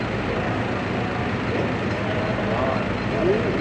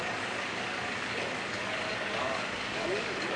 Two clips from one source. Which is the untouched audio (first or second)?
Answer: first